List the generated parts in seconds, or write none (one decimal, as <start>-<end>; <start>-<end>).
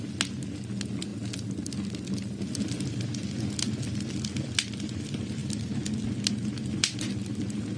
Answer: none